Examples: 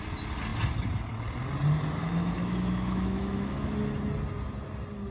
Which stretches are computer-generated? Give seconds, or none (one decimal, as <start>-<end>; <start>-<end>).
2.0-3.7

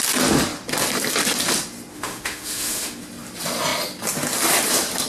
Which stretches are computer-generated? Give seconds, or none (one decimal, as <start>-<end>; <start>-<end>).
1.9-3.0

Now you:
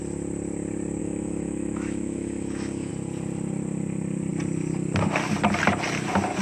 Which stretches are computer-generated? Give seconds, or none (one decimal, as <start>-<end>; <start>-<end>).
1.0-2.9

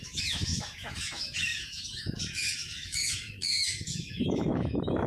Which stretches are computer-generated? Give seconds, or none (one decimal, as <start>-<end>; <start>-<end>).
0.0-5.1

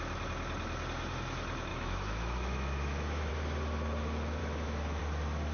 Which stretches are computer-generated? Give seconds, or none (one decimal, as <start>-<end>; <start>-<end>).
1.7-3.3; 4.4-5.0

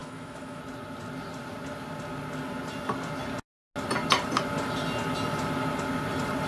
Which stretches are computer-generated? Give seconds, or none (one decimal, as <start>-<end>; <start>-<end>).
0.0-0.6

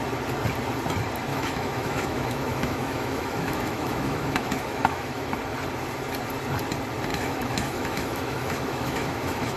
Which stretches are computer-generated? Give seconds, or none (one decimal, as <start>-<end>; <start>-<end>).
1.3-5.3; 7.1-9.6